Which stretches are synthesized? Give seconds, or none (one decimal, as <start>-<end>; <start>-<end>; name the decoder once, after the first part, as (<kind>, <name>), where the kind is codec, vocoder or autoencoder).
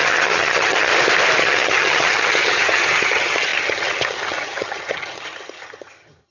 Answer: 0.0-0.9 (vocoder, HiFi-GAN); 1.4-6.3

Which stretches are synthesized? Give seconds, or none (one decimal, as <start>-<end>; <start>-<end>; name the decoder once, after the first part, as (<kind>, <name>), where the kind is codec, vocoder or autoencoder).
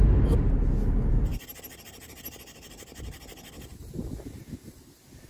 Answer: none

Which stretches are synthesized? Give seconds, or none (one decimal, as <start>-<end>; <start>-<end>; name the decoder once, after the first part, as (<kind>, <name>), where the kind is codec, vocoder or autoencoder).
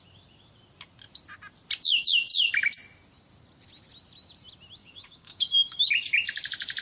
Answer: 4.8-5.9 (codec, DAC)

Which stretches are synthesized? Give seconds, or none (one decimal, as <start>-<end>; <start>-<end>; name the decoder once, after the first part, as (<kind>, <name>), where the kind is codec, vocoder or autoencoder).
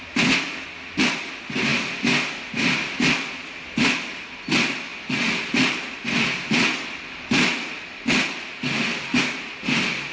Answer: none